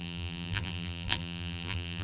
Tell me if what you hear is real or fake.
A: fake